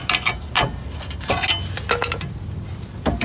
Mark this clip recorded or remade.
recorded